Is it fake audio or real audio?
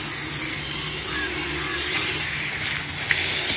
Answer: real